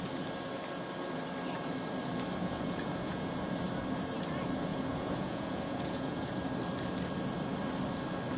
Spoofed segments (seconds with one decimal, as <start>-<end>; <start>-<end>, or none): 2.4-3.5; 4.7-6.3